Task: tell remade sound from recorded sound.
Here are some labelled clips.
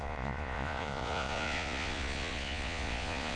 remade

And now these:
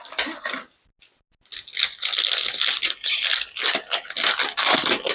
recorded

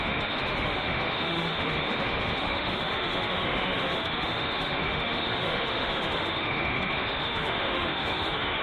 remade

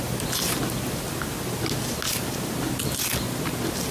recorded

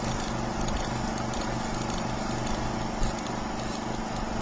recorded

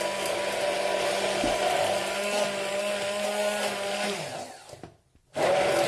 recorded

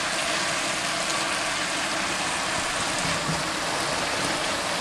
recorded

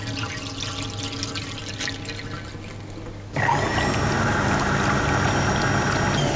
recorded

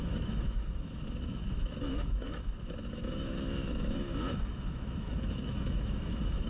remade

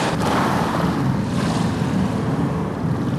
recorded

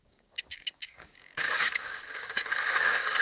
remade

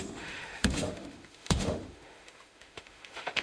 remade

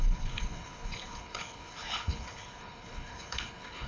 remade